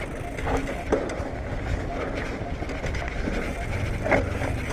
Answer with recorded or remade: recorded